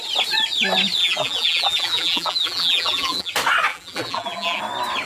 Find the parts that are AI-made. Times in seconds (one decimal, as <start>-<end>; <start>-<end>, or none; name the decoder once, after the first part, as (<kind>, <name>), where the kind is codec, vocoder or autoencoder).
1.0-3.3 (vocoder, BigVGAN v2); 3.7-4.6